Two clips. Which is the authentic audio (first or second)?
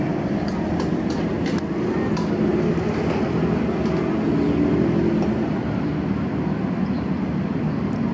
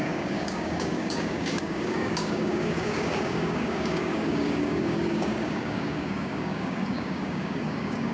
first